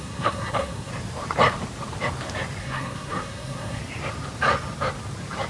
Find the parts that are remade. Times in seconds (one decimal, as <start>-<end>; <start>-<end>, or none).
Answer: 0.0-0.9; 2.6-3.8